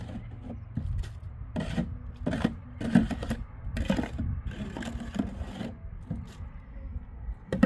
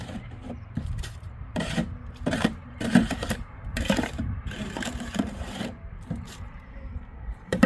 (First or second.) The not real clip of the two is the second